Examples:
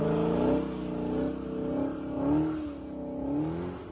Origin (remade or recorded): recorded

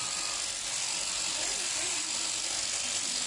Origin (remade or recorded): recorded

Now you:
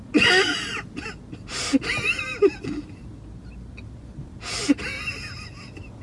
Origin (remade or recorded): recorded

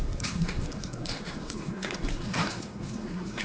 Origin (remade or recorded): remade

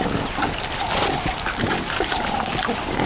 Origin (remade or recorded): recorded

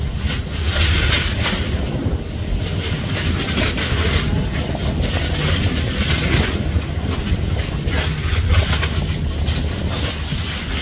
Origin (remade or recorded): recorded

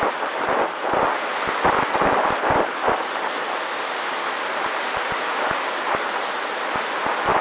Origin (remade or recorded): recorded